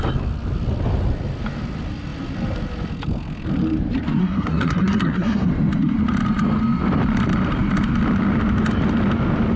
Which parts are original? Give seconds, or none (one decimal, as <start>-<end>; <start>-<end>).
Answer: 0.0-4.2; 5.5-9.6